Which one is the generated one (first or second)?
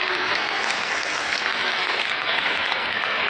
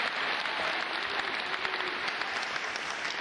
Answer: first